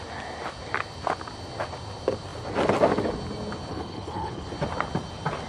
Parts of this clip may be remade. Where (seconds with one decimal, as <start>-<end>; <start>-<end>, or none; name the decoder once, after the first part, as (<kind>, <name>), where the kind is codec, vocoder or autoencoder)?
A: 3.7-4.5 (codec, HILCodec)